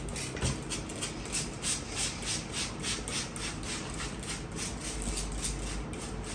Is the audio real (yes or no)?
yes